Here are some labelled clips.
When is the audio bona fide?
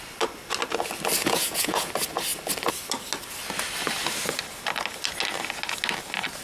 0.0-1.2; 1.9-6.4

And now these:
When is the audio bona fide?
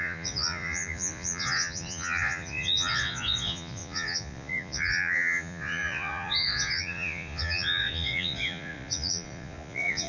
none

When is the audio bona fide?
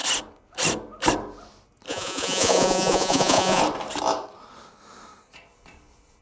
0.0-1.9; 3.6-6.2